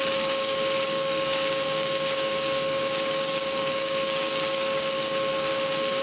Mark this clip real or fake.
fake